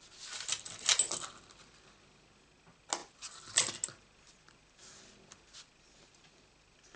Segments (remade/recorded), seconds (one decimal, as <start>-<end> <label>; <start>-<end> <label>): 0.0-7.0 recorded